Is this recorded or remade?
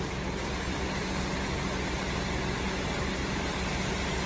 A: recorded